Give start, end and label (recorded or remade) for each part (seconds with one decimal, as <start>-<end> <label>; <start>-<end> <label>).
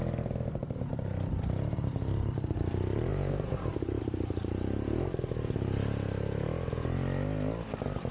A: 0.0-3.1 recorded; 3.1-4.0 remade; 4.0-8.1 recorded